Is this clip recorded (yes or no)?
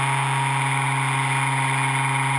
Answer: yes